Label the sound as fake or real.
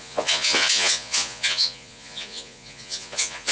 fake